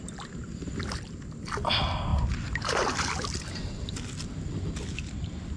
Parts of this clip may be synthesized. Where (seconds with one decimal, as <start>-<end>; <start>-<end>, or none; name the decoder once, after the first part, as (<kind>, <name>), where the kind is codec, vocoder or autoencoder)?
none